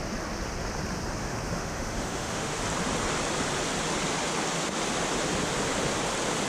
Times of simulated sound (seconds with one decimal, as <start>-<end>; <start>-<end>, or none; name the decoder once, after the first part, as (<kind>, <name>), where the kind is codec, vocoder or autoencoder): 1.2-2.6 (autoencoder, DAC-VAE)